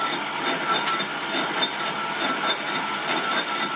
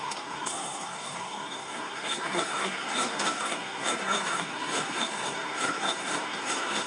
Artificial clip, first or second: second